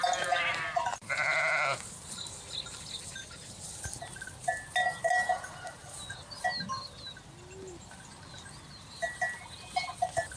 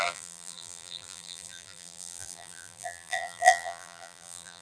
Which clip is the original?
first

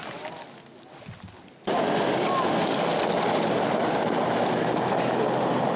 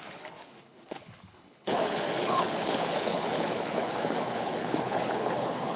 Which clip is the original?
first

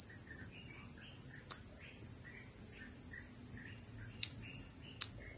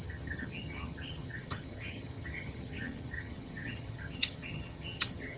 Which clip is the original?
first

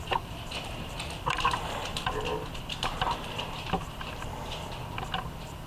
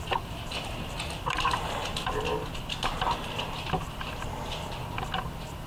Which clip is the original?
second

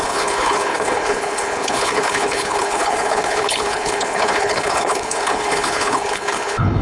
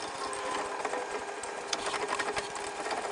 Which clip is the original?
second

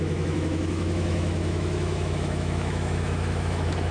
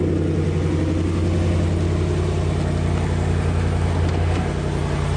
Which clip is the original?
second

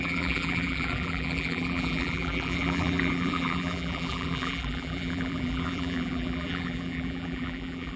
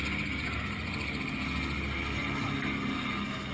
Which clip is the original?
second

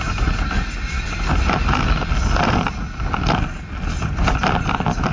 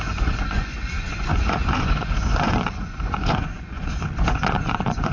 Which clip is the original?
first